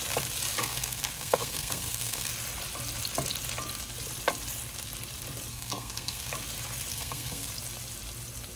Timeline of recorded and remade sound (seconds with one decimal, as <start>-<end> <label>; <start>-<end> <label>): 0.0-0.6 recorded; 0.6-2.3 remade; 2.3-5.5 recorded; 5.5-6.3 remade; 6.3-6.9 recorded; 6.9-7.5 remade; 7.5-8.6 recorded